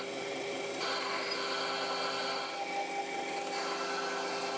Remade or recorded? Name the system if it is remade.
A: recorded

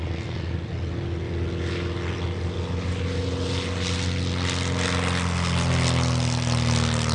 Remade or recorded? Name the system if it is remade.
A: recorded